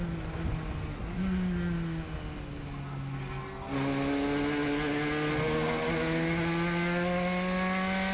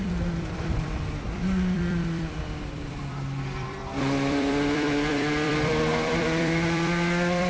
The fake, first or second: second